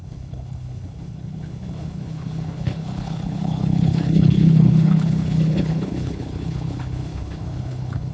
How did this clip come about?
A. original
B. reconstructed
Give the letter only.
B